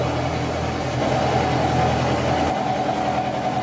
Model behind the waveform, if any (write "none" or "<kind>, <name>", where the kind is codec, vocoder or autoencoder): none